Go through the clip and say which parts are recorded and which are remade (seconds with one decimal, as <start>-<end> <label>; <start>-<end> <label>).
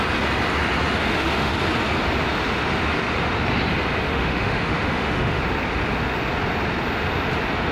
0.0-1.0 recorded; 1.0-1.5 remade; 1.5-4.1 recorded; 4.1-5.4 remade; 5.4-7.7 recorded